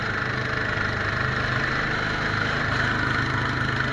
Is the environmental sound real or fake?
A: real